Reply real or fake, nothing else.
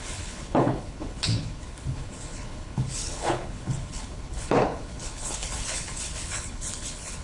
fake